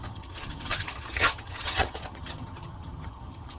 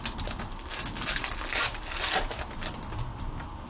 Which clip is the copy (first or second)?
first